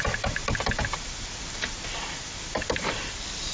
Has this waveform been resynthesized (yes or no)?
no